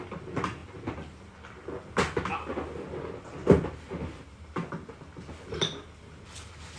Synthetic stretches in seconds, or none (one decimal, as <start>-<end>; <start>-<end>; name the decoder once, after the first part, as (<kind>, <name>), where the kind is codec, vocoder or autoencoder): none